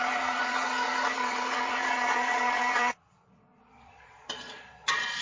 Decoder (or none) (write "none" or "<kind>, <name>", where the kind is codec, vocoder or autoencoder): vocoder, Vocos